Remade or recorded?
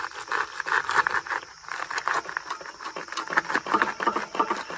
recorded